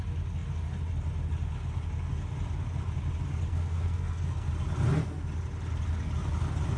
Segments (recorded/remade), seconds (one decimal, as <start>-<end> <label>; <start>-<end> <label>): 0.0-3.5 recorded; 3.5-4.5 remade; 4.5-6.8 recorded